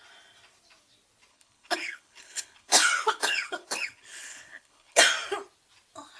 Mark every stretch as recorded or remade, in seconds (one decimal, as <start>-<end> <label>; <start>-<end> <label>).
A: 0.0-1.3 recorded; 1.3-5.0 remade; 5.0-6.2 recorded